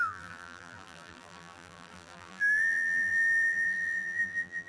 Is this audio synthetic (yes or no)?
yes